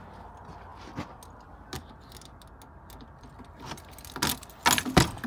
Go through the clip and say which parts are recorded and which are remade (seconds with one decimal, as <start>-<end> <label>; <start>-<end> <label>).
0.0-5.3 recorded